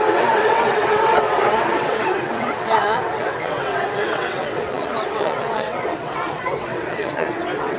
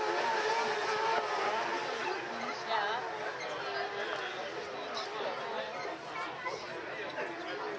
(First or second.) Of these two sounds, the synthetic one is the first